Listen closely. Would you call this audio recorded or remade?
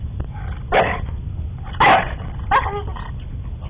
recorded